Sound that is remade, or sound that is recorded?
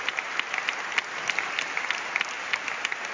recorded